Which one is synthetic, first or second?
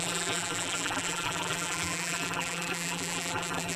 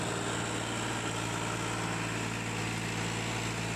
first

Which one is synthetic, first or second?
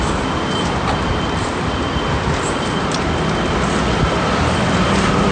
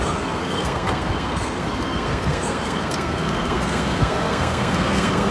second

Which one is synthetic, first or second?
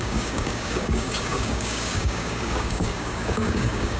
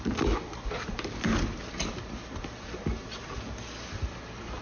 first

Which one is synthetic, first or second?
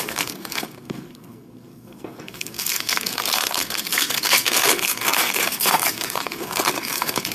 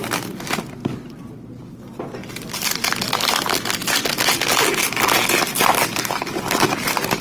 first